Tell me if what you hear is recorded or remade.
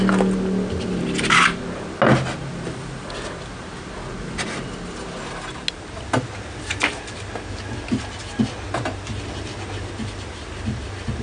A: recorded